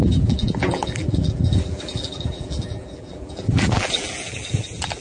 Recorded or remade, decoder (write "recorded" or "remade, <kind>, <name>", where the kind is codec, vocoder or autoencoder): remade, vocoder, BigVGAN v2